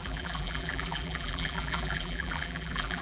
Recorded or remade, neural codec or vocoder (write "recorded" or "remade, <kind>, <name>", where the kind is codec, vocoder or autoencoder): remade, vocoder, BigVGAN v2